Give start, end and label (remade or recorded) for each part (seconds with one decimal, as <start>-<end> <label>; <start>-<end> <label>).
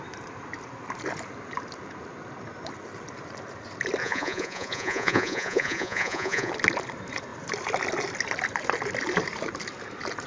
0.0-4.0 recorded; 4.0-6.5 remade; 6.5-10.3 recorded